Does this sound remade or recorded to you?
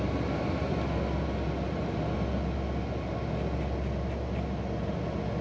recorded